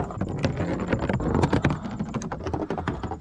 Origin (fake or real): real